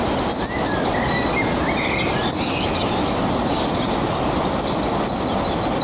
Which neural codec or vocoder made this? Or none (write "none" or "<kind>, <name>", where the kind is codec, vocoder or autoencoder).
none